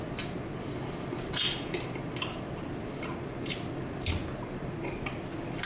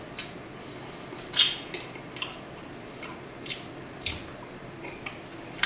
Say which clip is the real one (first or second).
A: second